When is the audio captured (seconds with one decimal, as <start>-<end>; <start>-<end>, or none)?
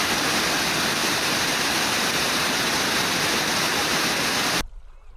0.0-1.0; 4.1-5.2